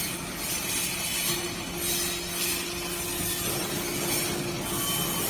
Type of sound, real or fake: real